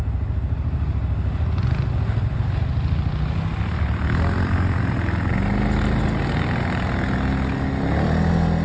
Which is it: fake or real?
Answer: real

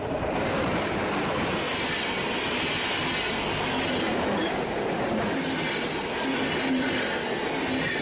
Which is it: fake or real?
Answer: real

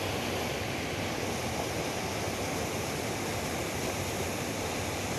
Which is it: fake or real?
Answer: real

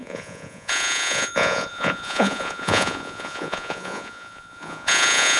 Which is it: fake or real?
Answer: fake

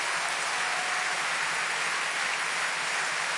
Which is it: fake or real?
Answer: real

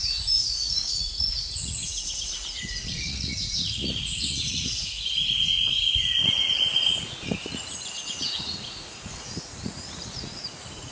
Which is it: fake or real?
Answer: fake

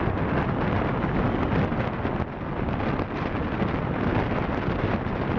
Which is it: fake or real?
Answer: real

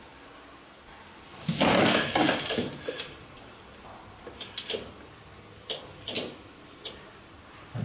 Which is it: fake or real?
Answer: real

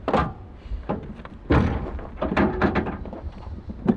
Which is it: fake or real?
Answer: fake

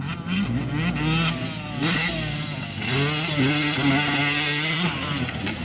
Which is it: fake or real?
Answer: real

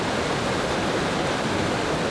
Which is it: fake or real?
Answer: real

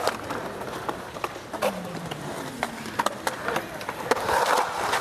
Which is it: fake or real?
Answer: real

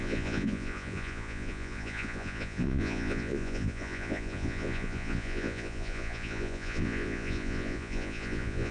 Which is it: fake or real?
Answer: fake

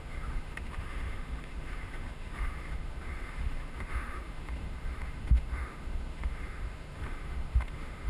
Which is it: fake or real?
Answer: fake